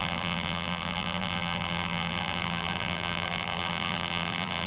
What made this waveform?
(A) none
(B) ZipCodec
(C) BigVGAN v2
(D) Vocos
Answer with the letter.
C